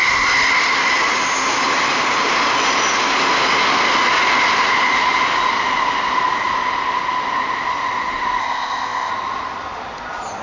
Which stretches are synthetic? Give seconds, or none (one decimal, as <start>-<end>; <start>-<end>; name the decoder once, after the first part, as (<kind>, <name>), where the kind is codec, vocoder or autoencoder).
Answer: 8.4-9.1 (codec, ZipCodec)